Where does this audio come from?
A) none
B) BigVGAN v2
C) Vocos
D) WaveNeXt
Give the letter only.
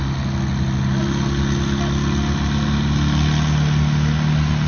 A